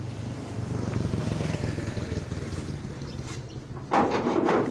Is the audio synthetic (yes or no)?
yes